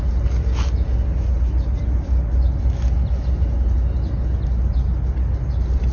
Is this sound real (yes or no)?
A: yes